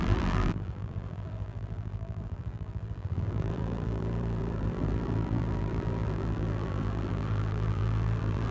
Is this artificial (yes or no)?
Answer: yes